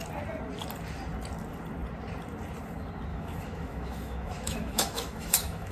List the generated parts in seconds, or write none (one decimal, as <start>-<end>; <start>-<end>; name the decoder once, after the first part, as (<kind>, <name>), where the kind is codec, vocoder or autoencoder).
3.1-5.7 (autoencoder, DAC-VAE)